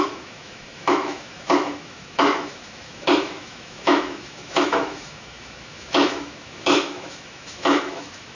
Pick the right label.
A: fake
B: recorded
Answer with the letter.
A